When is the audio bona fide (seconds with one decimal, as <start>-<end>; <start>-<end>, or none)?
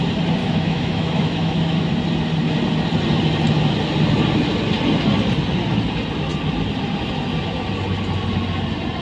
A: 0.0-0.4; 1.9-9.0